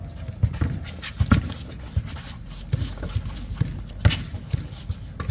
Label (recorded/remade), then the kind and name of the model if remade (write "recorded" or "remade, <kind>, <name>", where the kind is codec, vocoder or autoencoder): recorded